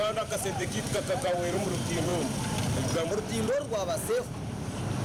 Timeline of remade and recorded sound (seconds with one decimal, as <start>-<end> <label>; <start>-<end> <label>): 0.0-2.1 remade; 2.1-4.1 recorded; 4.1-5.0 remade